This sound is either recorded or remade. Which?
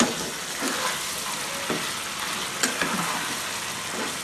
recorded